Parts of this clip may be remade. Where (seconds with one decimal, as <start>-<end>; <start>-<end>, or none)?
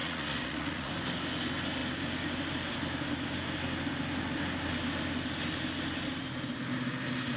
0.0-0.9